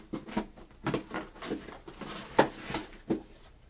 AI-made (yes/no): no